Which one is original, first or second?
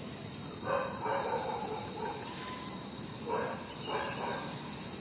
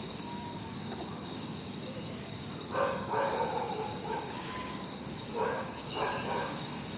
first